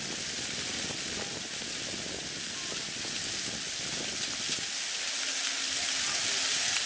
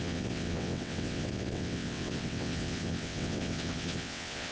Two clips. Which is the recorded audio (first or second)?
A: first